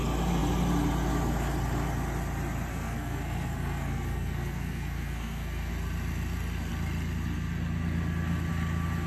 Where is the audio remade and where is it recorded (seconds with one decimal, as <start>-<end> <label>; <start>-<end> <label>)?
0.0-2.7 recorded; 2.7-5.7 remade; 5.7-9.1 recorded